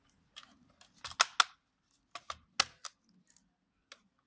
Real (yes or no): yes